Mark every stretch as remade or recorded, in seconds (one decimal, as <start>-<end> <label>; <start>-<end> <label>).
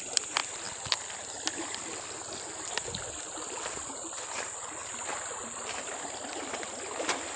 0.0-7.4 recorded